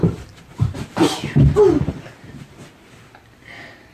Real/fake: real